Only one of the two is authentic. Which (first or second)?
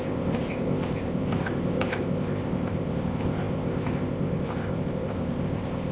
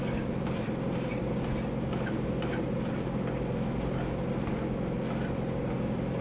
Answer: second